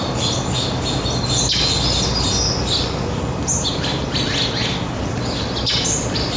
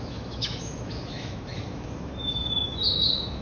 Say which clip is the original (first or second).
first